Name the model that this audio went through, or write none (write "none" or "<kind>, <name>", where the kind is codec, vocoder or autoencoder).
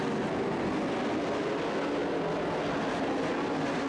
none